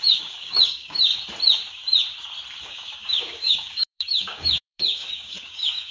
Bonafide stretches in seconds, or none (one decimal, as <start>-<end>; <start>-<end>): 1.1-2.6